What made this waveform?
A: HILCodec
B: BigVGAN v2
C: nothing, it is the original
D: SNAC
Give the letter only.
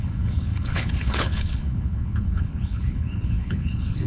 A